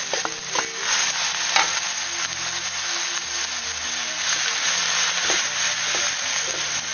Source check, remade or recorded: recorded